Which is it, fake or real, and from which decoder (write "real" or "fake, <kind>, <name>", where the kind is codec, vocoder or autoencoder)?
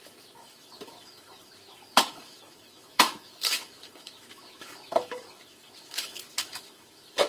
fake, autoencoder, DAC-VAE